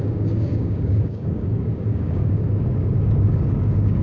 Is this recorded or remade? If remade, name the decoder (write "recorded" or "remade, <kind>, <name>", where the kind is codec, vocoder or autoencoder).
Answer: remade, codec, DAC